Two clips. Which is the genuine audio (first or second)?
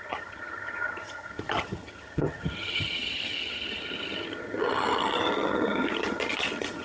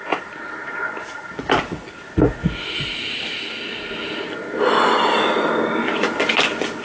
second